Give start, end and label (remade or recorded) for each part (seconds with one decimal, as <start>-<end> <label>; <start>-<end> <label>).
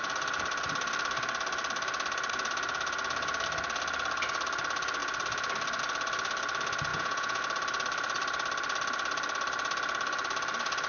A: 0.0-6.9 recorded; 6.9-7.4 remade; 7.4-10.9 recorded